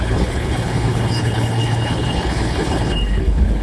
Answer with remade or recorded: remade